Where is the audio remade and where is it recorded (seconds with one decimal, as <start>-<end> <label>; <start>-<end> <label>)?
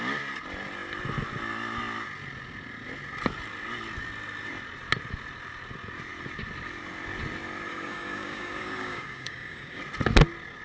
0.0-7.7 recorded; 7.7-9.8 remade; 9.8-10.6 recorded